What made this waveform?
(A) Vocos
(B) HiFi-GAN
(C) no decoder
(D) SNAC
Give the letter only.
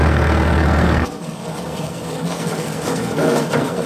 D